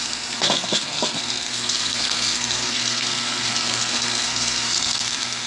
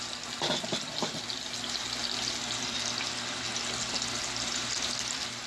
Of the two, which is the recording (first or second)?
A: second